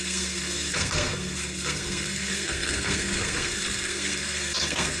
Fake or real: fake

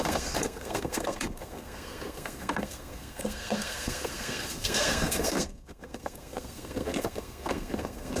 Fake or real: fake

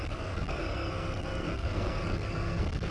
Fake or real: fake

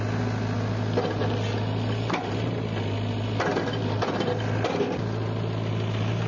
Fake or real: real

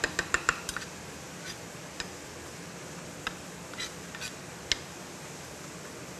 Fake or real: real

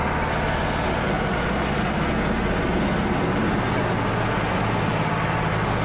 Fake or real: real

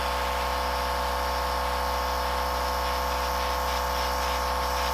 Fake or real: real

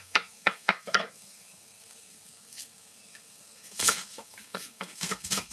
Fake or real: fake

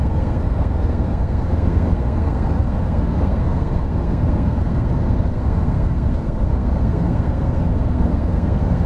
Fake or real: fake